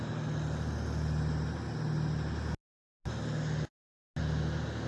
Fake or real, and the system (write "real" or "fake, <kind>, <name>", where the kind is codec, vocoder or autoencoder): real